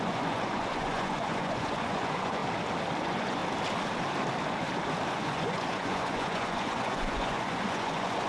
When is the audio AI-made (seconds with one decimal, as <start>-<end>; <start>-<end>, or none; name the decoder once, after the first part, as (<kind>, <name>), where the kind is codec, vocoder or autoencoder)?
0.0-2.4 (vocoder, Vocos); 3.0-3.4; 5.1-8.3